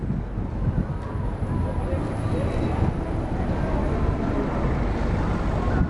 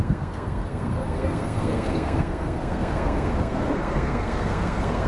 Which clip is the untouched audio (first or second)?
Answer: first